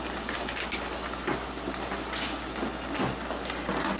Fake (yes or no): no